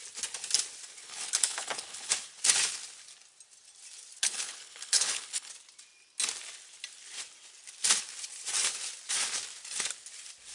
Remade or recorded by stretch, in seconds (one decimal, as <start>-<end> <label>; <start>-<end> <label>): 0.0-1.0 recorded; 1.0-2.1 remade; 2.1-4.2 recorded; 4.2-5.5 remade; 5.5-10.5 recorded